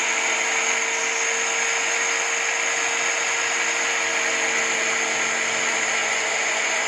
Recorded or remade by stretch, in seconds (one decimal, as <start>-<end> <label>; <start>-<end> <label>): 0.0-6.0 recorded; 6.0-6.9 remade